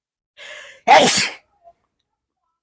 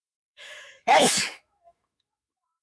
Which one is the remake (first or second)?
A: second